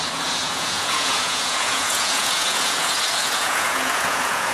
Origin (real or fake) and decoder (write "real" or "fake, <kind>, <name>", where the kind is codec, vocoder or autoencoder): fake, vocoder, Vocos